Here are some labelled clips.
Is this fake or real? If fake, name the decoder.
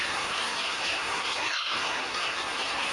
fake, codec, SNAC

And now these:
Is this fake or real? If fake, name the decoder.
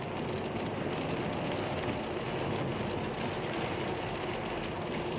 real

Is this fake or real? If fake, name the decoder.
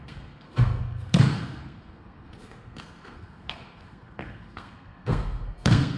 fake, codec, SNAC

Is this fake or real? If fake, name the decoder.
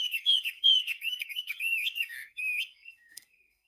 fake, codec, SNAC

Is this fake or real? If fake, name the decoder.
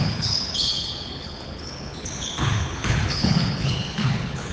fake, codec, HILCodec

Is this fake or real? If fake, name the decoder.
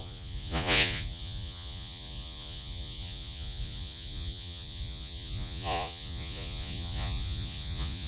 fake, vocoder, Vocos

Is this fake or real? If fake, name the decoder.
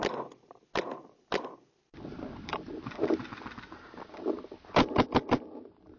real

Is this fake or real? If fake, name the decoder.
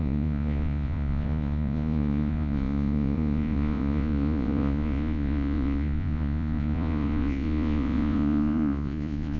fake, vocoder, Vocos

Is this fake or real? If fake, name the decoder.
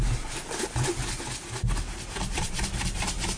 real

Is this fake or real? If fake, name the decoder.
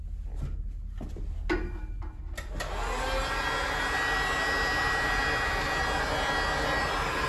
real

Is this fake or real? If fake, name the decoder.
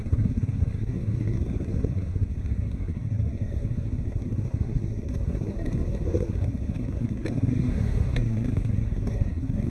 fake, codec, SNAC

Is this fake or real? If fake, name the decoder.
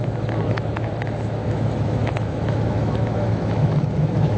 fake, autoencoder, DAC-VAE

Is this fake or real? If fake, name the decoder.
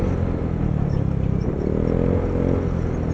real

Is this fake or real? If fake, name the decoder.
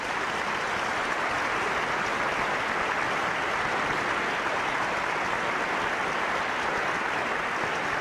real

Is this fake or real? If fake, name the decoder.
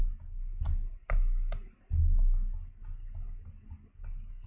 real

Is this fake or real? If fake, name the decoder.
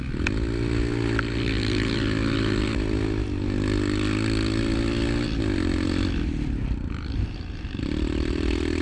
real